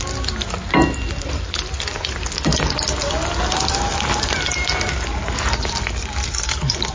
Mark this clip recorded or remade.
recorded